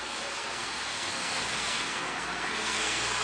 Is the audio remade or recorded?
remade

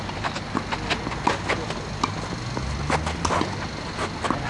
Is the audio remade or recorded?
recorded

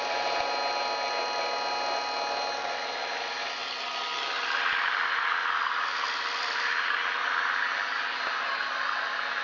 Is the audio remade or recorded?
recorded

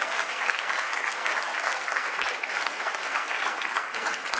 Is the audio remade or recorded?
remade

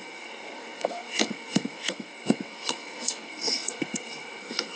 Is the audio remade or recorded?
remade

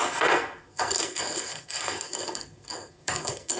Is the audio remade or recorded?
remade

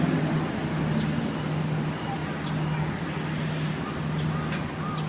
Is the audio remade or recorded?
recorded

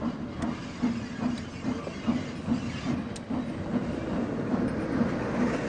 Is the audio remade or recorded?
recorded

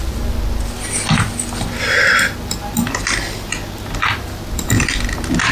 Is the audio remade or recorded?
recorded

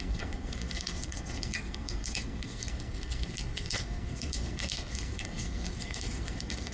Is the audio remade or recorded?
remade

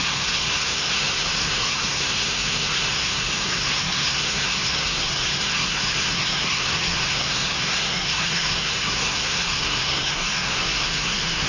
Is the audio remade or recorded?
remade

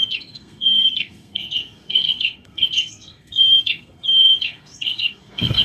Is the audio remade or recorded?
remade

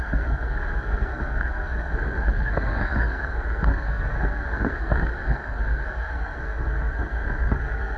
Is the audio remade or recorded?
remade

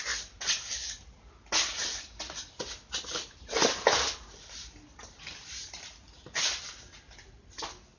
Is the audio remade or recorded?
recorded